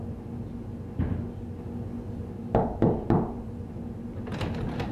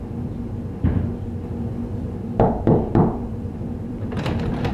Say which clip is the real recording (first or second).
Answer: first